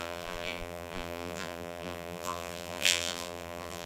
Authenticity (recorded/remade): remade